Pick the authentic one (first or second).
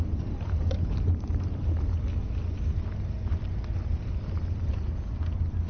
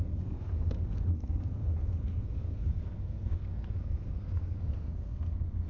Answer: first